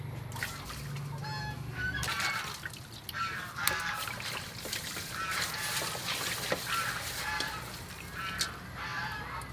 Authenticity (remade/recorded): recorded